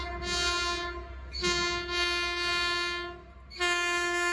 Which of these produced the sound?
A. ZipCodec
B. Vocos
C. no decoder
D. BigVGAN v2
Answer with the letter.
C